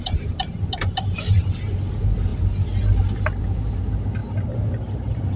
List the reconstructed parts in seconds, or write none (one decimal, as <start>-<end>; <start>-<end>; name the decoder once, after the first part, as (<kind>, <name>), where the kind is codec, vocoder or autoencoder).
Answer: none